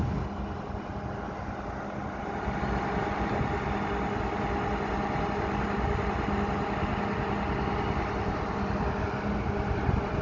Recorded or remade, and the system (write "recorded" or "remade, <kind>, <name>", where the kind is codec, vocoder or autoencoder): recorded